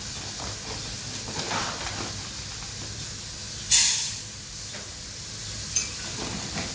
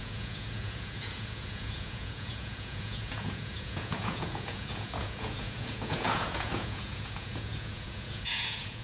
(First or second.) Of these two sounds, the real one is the first